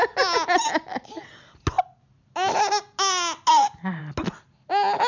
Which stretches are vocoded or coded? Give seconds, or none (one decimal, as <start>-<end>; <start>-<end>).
none